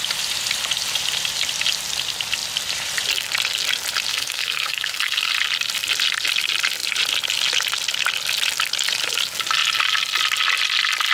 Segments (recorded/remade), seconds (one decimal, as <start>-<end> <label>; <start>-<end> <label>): 0.0-4.1 recorded; 4.1-5.3 remade; 5.3-11.1 recorded

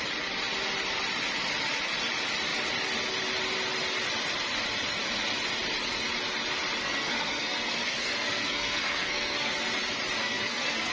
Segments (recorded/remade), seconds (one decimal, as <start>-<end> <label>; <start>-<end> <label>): 0.0-6.8 recorded; 6.8-9.5 remade; 9.5-10.2 recorded; 10.2-10.9 remade

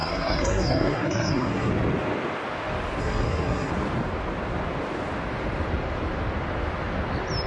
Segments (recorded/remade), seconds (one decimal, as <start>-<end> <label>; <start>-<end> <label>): 0.0-1.7 remade; 1.7-3.0 recorded; 3.0-3.7 remade; 3.7-7.5 recorded

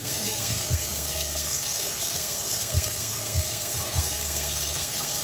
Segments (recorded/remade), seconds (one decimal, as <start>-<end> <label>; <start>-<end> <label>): 0.0-5.2 remade

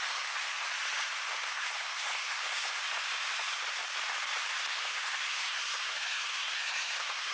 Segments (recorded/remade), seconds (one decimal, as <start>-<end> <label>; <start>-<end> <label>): 0.0-0.5 remade; 0.5-1.5 recorded; 1.5-2.8 remade; 2.8-4.5 recorded; 4.5-7.3 remade

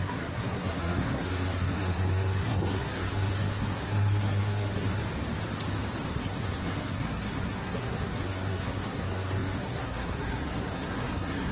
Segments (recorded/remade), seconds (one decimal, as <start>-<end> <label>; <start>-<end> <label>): 0.0-5.0 remade; 5.0-6.1 recorded; 6.1-11.5 remade

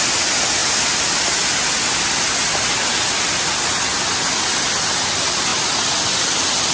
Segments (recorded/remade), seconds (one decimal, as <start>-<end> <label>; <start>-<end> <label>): 0.0-6.7 recorded